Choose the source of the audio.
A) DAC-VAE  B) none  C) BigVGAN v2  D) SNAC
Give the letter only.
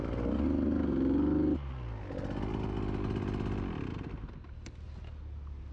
B